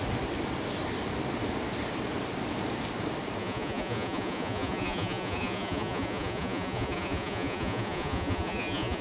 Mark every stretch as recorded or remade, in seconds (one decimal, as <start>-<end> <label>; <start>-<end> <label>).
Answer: 0.0-3.4 recorded; 3.4-9.0 remade